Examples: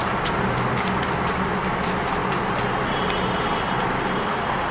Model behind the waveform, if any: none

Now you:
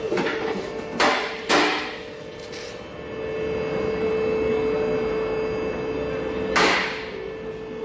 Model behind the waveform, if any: none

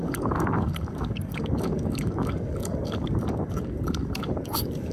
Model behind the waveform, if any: codec, DAC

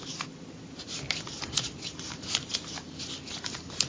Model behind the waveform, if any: none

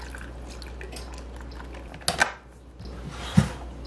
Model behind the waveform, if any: none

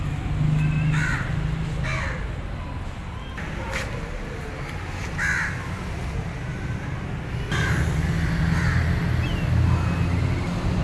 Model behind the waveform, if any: none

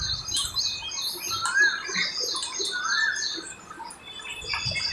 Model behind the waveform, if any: none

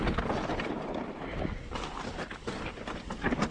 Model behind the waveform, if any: none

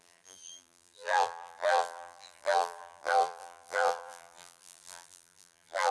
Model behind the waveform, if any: vocoder, BigVGAN v2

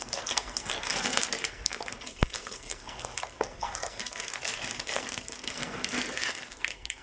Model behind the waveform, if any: codec, SNAC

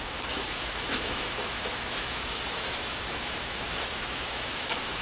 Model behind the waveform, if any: autoencoder, DAC-VAE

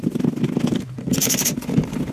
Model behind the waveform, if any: none